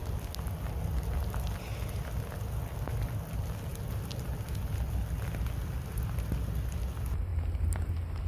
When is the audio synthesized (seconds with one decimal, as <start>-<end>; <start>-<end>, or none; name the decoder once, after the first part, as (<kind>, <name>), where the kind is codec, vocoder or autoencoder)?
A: 7.3-7.9 (vocoder, BigVGAN v2)